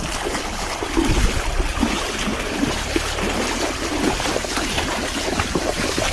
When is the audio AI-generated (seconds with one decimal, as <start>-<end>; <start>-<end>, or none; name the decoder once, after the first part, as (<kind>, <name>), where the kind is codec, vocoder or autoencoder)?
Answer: none